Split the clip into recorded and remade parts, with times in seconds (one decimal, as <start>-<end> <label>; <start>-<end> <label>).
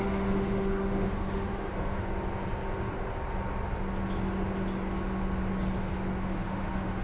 0.0-2.0 remade; 2.0-6.2 recorded; 6.2-7.0 remade